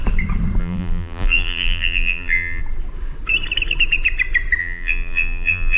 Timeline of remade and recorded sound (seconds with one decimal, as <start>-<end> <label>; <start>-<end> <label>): 0.0-0.6 recorded; 0.6-2.6 remade; 2.6-4.6 recorded; 4.6-5.8 remade